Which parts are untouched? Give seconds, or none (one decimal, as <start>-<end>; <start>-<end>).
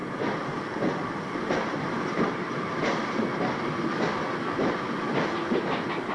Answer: 0.6-1.4; 3.8-6.1